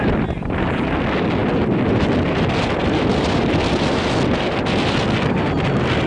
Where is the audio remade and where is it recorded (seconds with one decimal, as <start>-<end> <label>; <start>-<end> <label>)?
0.0-6.1 recorded